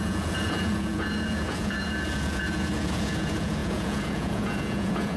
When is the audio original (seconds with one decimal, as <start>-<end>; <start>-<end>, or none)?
none